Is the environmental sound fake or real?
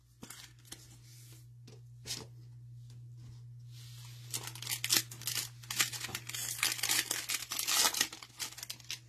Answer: real